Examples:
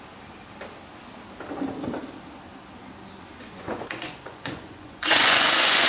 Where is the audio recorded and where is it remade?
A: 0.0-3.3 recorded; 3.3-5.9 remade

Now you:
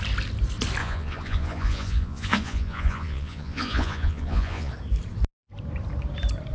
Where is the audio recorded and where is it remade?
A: 0.0-0.8 recorded; 0.8-4.7 remade; 4.7-6.5 recorded

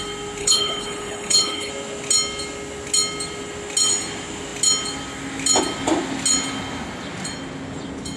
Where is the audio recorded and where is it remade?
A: 0.0-0.4 recorded; 0.4-1.7 remade; 1.7-8.2 recorded

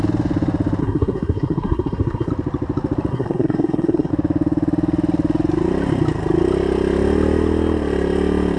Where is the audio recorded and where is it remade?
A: 0.0-0.8 recorded; 0.8-2.3 remade; 2.3-3.1 recorded; 3.1-4.1 remade; 4.1-8.6 recorded

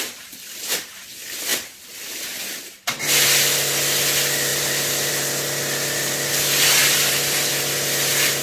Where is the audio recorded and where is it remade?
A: 0.0-1.5 recorded; 1.5-2.4 remade; 2.4-6.8 recorded; 6.8-7.5 remade; 7.5-8.4 recorded

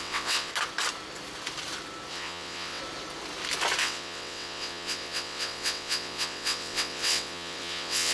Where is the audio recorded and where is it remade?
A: 0.0-0.5 remade; 0.5-2.1 recorded; 2.1-2.8 remade; 2.8-3.8 recorded; 3.8-8.1 remade